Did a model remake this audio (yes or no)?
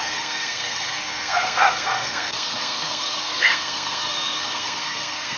yes